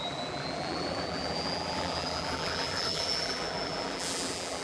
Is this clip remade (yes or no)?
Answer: yes